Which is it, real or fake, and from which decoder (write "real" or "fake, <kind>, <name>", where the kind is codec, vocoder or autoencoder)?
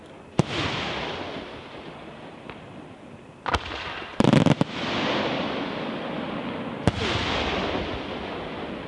real